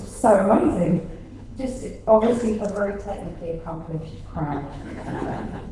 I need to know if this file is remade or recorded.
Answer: remade